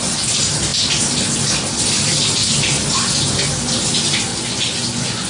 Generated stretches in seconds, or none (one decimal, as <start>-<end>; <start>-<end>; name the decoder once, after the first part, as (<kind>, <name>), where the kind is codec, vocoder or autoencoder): 4.3-5.3 (vocoder, Vocos)